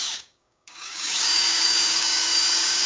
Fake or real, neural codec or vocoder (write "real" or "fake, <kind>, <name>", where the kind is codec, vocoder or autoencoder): fake, codec, DAC